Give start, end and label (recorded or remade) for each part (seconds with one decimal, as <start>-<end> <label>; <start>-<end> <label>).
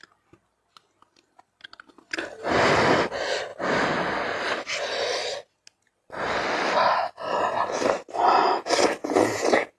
0.0-9.0 recorded; 9.0-9.8 remade